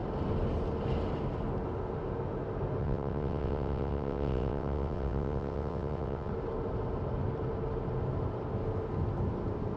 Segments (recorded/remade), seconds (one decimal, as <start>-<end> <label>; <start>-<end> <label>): 0.0-2.8 recorded; 2.8-6.3 remade; 6.3-9.8 recorded